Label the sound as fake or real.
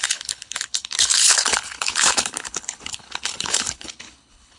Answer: fake